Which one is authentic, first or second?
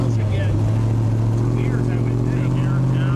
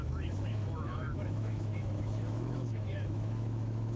first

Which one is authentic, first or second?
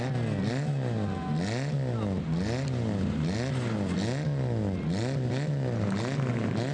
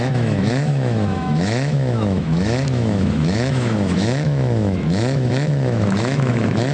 first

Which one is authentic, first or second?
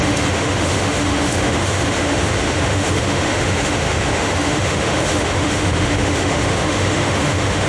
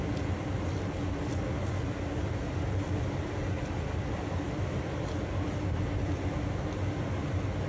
second